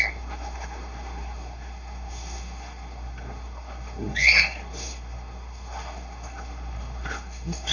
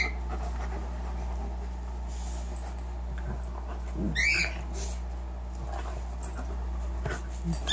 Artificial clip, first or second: first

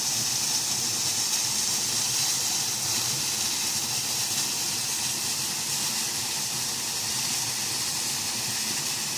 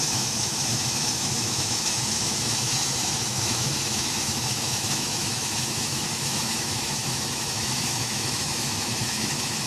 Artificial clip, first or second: second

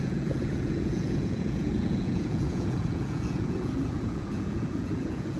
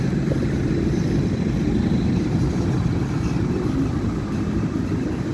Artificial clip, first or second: first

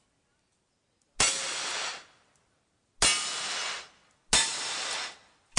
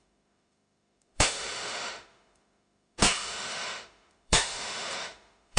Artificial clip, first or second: second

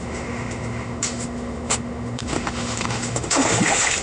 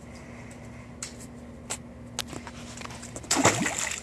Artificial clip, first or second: first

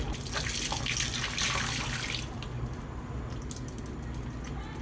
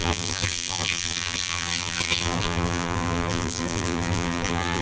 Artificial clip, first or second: second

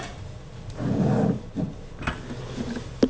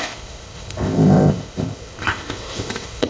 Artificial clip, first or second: second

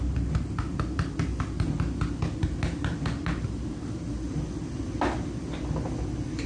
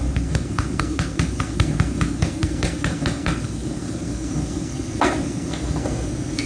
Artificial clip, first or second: second